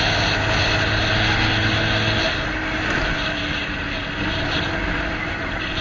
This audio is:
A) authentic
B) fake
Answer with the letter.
A